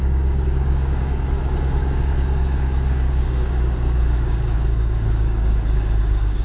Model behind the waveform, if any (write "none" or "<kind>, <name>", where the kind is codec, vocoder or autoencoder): codec, DAC